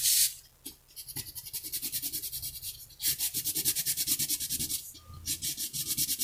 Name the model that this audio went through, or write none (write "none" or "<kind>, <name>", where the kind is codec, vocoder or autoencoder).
none